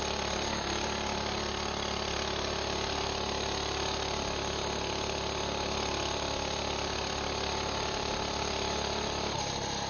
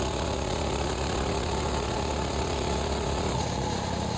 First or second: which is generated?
second